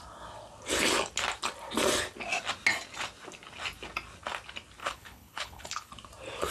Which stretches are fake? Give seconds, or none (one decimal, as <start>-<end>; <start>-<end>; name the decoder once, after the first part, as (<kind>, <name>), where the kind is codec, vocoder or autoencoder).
4.8-5.9 (codec, HILCodec)

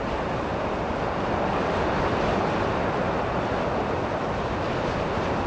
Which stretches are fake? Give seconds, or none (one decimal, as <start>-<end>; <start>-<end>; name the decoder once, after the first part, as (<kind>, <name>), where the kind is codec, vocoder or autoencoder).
none

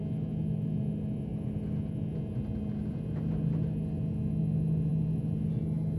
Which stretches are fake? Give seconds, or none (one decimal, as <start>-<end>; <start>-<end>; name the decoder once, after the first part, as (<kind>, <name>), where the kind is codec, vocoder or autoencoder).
none

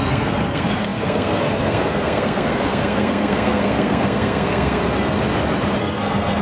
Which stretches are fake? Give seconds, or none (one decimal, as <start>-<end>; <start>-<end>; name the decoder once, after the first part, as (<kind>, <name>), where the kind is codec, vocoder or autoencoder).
0.0-4.8 (codec, SNAC); 5.8-6.4

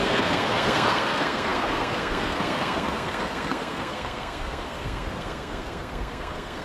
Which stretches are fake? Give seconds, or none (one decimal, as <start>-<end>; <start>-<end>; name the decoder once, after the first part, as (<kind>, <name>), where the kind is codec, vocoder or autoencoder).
0.0-6.6 (codec, SNAC)

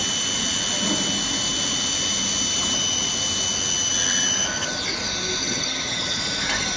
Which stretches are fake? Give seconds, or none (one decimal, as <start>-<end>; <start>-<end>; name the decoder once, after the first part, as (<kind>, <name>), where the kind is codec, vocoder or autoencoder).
5.4-6.2 (vocoder, HiFi-GAN)